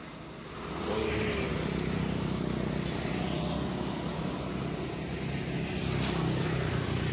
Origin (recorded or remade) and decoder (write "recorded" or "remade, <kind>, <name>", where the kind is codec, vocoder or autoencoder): recorded